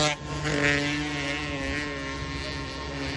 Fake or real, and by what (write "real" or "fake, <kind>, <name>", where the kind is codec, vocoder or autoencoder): real